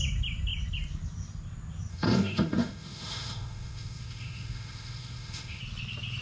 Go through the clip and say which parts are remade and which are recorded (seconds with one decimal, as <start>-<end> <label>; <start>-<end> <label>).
0.0-1.9 recorded; 1.9-5.6 remade; 5.6-6.2 recorded